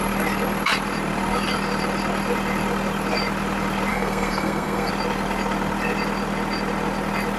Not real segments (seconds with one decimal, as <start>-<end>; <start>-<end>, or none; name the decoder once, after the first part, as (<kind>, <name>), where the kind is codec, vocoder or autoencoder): 3.9-4.9 (codec, SNAC)